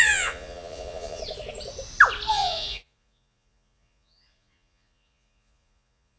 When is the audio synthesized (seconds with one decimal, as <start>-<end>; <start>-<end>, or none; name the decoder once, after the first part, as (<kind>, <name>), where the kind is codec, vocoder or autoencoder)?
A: 0.0-1.2 (vocoder, Vocos); 2.3-6.2